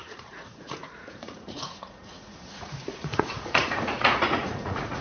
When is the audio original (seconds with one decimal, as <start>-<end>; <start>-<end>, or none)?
none